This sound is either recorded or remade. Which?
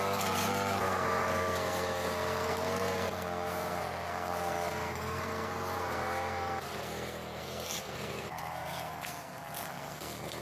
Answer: remade